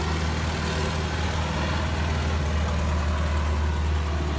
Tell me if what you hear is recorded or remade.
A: recorded